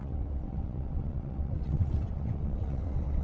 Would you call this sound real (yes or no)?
no